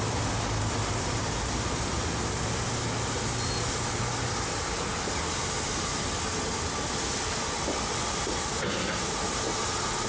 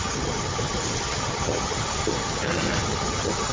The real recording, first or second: first